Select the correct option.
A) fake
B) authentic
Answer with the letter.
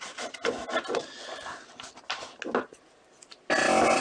B